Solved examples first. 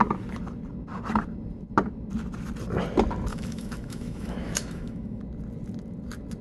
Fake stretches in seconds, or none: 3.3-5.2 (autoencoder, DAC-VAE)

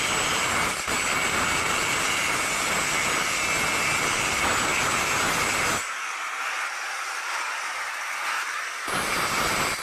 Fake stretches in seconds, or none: none